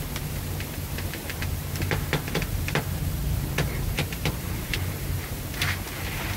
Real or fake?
fake